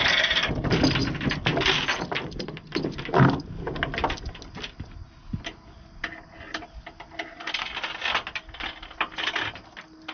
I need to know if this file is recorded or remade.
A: recorded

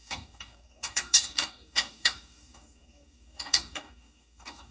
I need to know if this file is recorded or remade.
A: remade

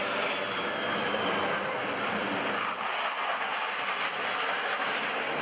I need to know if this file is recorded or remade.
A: recorded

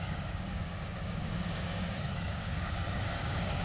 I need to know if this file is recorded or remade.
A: remade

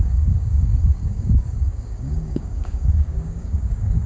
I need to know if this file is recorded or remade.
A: remade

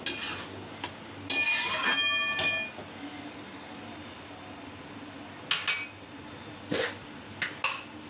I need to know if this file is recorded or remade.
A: recorded